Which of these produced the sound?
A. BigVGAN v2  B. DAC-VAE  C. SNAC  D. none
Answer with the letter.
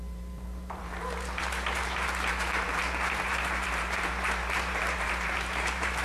A